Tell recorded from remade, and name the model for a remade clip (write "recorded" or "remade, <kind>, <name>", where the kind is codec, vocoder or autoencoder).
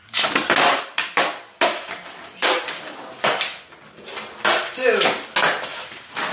recorded